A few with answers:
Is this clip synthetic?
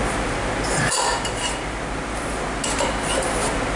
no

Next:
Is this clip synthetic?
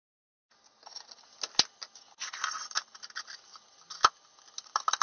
no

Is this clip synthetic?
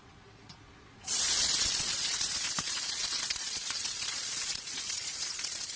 yes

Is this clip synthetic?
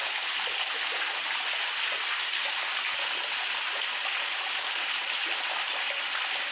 no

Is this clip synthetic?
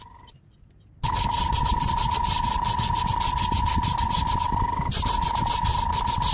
no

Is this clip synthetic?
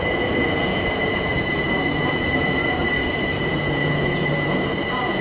yes